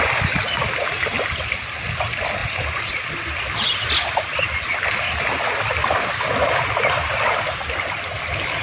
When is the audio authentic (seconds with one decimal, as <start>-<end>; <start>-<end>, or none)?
0.0-8.6